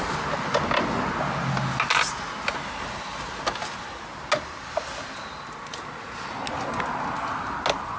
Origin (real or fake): real